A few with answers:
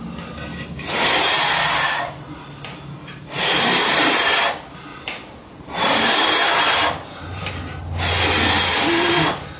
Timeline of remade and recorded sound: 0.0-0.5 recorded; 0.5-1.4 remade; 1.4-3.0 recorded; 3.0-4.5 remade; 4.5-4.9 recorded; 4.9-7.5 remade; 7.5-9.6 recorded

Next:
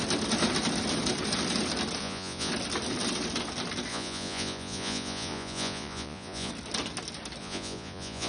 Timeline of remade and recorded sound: 0.0-2.0 recorded; 2.0-2.5 remade; 2.5-3.9 recorded; 3.9-6.5 remade; 6.5-7.4 recorded; 7.4-8.3 remade

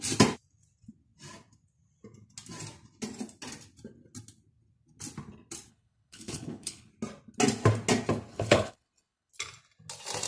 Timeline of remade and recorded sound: 0.0-5.7 recorded; 5.7-6.9 remade; 6.9-8.3 recorded; 8.3-9.3 remade; 9.3-10.3 recorded